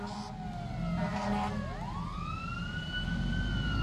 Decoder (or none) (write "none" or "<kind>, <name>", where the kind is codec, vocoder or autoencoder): none